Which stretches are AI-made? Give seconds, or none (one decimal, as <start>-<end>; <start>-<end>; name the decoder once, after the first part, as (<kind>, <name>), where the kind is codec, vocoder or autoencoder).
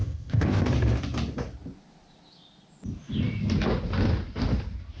0.0-0.7 (codec, ZipCodec)